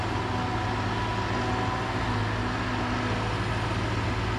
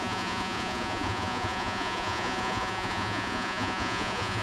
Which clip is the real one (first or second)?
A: first